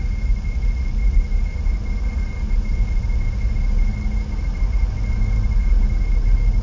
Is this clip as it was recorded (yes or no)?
yes